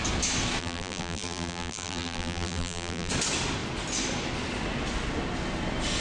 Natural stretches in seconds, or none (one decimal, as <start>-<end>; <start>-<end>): 0.0-0.6; 3.1-6.0